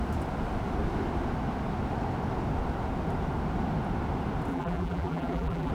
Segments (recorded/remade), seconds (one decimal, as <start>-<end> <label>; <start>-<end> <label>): 0.0-4.5 recorded; 4.5-5.7 remade